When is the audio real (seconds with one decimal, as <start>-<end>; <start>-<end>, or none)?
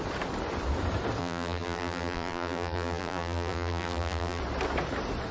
0.0-1.2; 4.4-5.3